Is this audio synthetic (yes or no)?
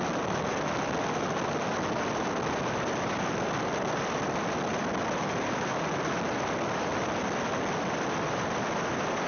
no